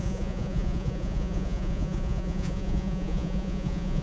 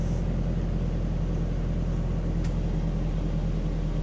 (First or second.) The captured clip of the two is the second